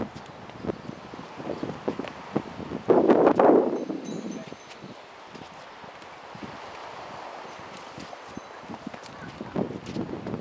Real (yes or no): yes